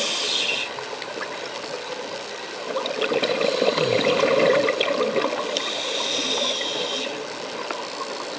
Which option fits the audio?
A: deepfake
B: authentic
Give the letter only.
B